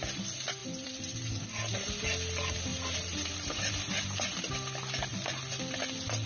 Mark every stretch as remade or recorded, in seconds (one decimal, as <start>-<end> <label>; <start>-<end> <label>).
0.0-0.6 recorded; 0.6-1.4 remade; 1.4-2.7 recorded; 2.7-3.7 remade; 3.7-6.3 recorded